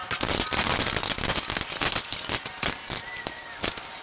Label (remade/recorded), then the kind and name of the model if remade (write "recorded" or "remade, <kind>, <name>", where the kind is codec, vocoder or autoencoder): recorded